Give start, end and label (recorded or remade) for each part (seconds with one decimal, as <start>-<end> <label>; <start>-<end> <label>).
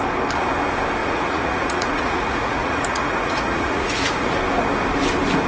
0.0-1.0 recorded; 1.0-4.3 remade; 4.3-5.5 recorded